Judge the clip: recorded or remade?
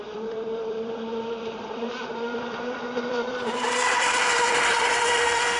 remade